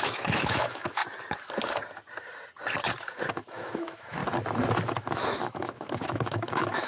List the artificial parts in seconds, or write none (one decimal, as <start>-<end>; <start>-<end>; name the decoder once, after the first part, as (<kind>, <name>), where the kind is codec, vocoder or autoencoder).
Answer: 0.0-1.0 (autoencoder, DAC-VAE); 3.3-4.2; 5.1-6.9